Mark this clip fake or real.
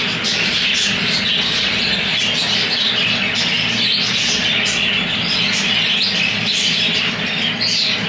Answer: real